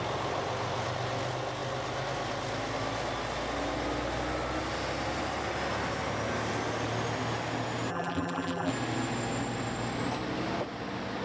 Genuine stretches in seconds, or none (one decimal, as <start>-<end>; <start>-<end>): 0.0-7.9; 8.7-11.2

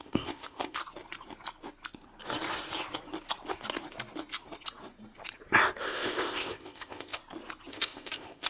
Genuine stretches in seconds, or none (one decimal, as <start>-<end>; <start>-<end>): 0.8-5.8; 7.2-7.7

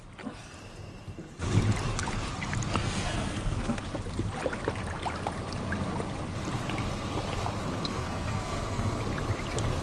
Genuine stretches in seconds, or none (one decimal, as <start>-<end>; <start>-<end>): 0.0-2.8; 3.8-7.9; 9.0-9.8